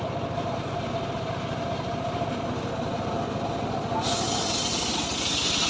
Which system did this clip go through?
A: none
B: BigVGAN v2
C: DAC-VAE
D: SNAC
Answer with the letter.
A